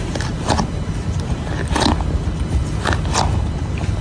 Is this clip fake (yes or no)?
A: no